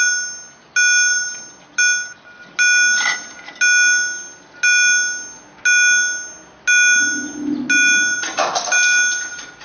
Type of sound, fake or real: real